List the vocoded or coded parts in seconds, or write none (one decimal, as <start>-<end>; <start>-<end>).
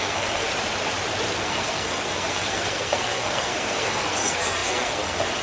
0.0-0.5; 1.4-5.4